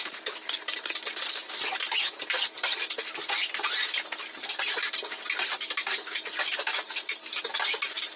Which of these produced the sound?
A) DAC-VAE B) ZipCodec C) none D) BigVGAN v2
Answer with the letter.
C